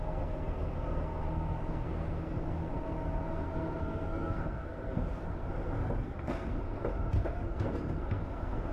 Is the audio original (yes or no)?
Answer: no